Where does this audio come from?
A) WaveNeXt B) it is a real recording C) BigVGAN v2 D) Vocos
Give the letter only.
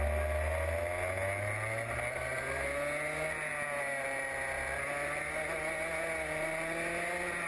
B